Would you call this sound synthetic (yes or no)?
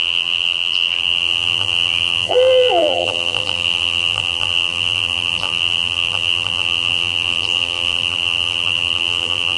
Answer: yes